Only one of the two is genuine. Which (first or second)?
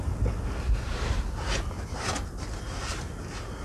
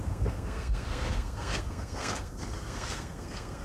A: first